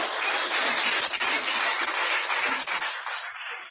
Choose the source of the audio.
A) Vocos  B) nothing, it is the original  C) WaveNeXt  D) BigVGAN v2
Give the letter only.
B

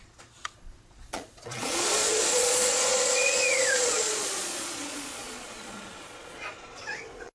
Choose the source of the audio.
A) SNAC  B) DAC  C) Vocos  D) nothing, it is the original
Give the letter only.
C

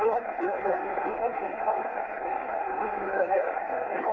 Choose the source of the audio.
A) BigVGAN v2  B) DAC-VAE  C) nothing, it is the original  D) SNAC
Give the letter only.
D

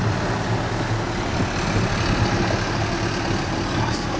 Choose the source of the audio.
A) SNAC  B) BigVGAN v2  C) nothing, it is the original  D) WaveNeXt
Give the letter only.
C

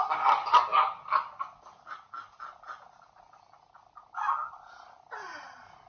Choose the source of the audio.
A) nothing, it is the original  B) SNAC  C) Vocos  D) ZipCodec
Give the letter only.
A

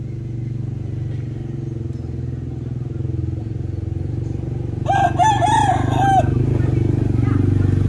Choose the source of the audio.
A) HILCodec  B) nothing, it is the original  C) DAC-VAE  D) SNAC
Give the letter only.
B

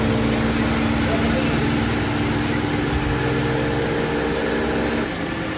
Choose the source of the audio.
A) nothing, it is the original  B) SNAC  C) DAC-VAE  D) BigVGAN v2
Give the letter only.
A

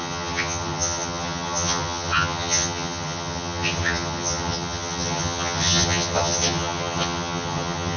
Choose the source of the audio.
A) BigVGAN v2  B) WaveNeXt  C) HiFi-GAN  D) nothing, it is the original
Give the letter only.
C